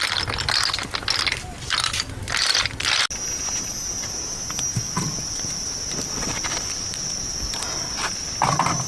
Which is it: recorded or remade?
recorded